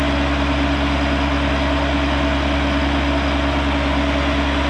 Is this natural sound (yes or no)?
yes